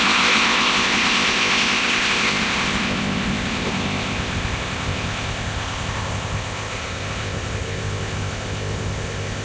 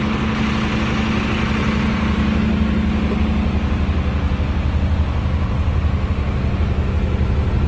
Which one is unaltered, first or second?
second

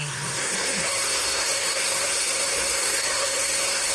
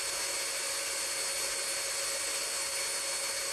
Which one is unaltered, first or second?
second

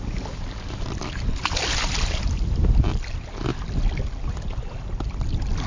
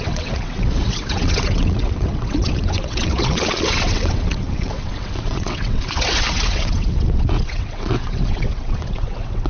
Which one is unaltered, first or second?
first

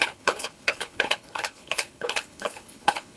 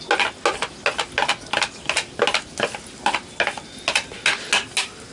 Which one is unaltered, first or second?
second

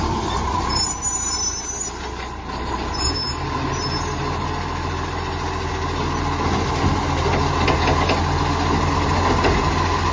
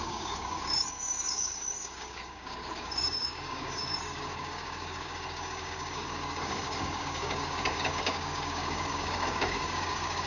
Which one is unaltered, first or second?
first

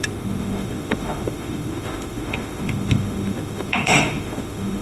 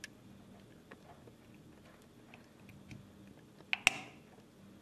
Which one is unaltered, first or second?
second